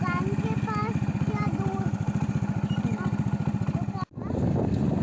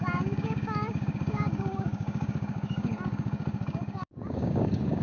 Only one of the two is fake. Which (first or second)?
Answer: second